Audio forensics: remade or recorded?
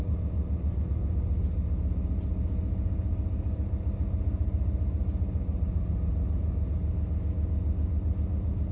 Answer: recorded